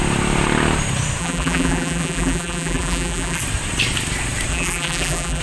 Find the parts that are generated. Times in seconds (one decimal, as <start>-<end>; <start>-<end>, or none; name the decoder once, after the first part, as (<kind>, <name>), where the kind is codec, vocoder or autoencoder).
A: 1.2-3.4 (vocoder, BigVGAN v2); 4.5-5.4